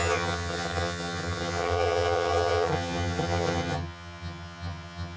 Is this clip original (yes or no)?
no